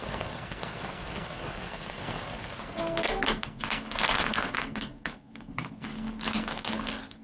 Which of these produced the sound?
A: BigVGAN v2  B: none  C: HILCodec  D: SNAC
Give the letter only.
D